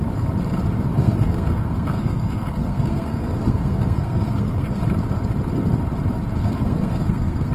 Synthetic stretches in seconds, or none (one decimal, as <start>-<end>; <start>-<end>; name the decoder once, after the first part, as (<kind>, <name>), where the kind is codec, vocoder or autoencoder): 1.0-4.8 (codec, SNAC); 6.4-7.5